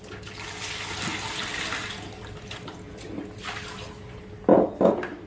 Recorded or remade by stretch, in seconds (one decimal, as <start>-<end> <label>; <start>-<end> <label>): 0.0-5.3 recorded